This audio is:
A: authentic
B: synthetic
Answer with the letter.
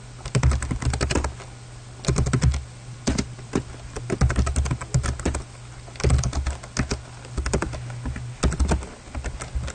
A